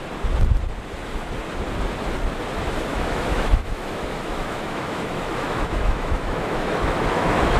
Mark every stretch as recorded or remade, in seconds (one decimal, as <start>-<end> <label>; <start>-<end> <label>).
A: 0.0-2.9 recorded; 2.9-7.6 remade